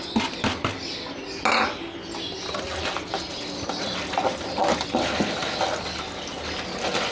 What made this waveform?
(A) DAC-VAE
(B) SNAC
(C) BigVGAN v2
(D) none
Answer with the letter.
D